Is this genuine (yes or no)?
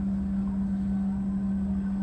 yes